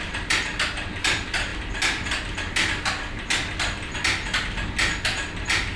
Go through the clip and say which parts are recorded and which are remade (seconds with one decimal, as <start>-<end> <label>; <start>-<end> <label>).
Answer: 0.0-5.8 recorded